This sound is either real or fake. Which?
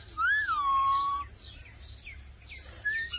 real